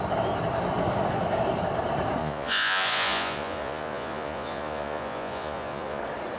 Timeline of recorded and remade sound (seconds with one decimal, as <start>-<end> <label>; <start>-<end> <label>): 0.0-2.2 recorded; 2.2-6.0 remade; 6.0-6.4 recorded